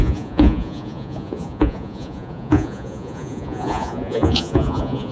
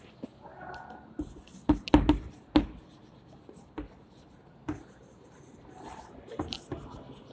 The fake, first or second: first